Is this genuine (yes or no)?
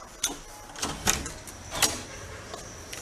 yes